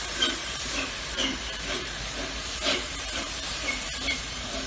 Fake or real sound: fake